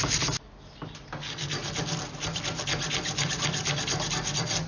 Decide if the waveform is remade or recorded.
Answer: recorded